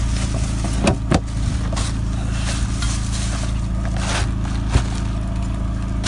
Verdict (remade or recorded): recorded